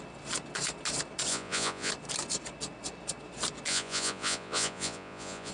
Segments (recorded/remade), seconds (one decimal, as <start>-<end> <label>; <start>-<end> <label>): 0.0-1.3 recorded; 1.3-1.9 remade; 1.9-3.7 recorded; 3.7-5.5 remade